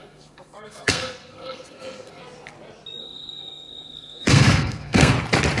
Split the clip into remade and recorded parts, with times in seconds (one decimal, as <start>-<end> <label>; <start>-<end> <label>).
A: 0.0-2.2 remade; 2.2-3.0 recorded; 3.0-5.1 remade; 5.1-5.6 recorded